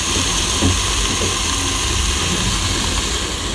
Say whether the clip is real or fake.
real